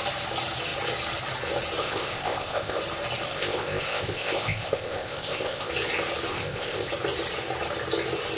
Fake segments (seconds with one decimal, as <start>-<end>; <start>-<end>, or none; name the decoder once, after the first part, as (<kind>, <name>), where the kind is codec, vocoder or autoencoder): 1.8-2.8 (codec, ZipCodec); 3.3-5.7; 6.3-6.9